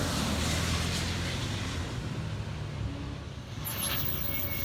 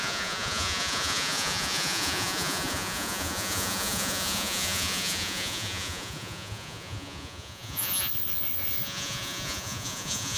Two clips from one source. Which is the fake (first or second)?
second